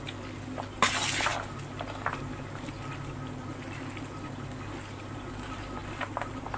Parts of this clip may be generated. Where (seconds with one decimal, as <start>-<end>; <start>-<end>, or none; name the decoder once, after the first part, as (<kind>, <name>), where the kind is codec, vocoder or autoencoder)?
none

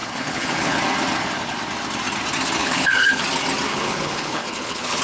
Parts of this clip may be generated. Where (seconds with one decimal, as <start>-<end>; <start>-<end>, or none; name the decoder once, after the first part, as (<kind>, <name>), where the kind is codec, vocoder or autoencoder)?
0.0-0.8 (codec, HILCodec); 2.6-3.2; 3.7-5.0